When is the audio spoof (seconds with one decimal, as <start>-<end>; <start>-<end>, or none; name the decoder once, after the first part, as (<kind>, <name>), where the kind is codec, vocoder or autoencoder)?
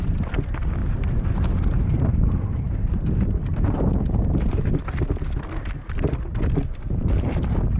0.8-2.9 (vocoder, BigVGAN v2); 3.5-4.7